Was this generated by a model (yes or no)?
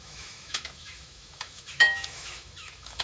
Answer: yes